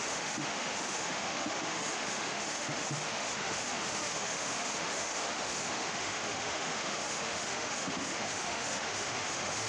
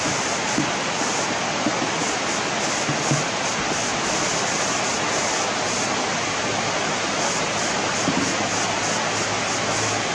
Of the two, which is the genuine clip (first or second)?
second